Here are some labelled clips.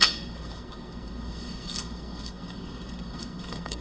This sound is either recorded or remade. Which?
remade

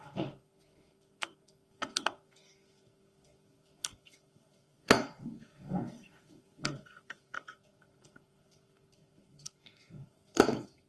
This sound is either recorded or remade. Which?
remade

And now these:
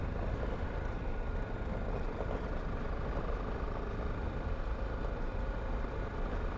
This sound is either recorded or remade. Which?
recorded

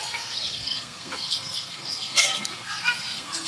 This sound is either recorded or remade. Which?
remade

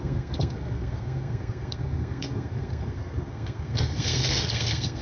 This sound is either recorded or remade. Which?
remade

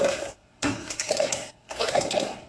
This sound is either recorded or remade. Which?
remade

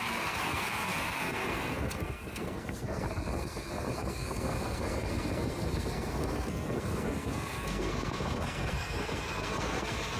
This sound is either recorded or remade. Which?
remade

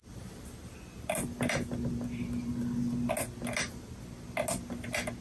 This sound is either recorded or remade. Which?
recorded